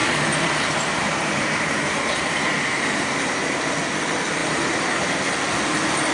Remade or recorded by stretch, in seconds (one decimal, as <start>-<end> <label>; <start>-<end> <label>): 0.0-3.7 remade; 3.7-4.4 recorded; 4.4-5.2 remade; 5.2-6.1 recorded

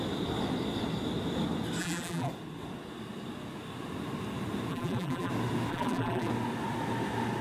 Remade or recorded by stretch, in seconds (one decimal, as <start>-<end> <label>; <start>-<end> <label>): 0.0-1.8 recorded; 1.8-2.3 remade; 2.3-4.7 recorded; 4.7-5.3 remade; 5.3-5.7 recorded; 5.7-6.3 remade; 6.3-7.4 recorded